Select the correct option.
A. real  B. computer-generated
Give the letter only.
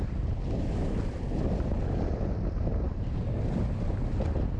A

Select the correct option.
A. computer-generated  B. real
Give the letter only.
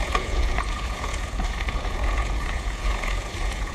A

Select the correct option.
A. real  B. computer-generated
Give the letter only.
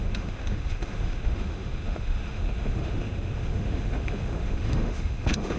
B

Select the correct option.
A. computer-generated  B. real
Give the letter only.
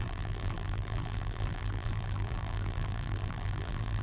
A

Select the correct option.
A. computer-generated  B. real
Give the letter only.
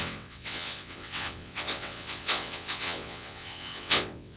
A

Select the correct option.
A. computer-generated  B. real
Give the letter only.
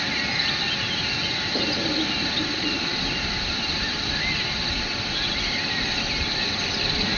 B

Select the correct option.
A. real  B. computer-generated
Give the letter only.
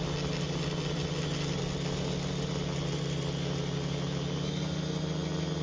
A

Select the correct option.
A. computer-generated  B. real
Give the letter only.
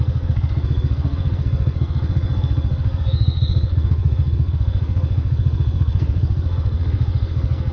A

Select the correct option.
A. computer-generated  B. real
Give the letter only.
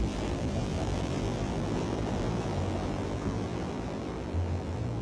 A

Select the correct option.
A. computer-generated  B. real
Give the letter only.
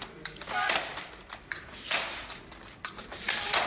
B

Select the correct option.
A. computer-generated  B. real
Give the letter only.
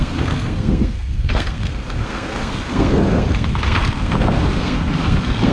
A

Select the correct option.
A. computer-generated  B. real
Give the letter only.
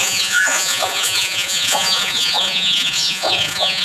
A